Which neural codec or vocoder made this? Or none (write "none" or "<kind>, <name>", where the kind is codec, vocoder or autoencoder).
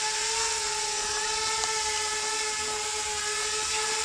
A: none